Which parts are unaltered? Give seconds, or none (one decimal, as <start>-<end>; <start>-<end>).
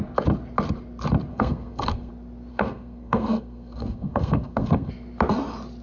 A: 0.0-1.3; 2.1-2.5; 4.9-5.8